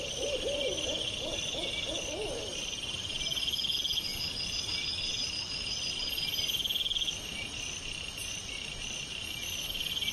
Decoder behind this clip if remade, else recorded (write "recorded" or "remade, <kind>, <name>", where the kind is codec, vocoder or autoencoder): recorded